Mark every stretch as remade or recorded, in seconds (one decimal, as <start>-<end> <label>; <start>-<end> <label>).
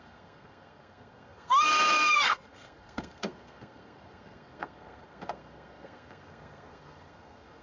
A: 0.0-7.6 remade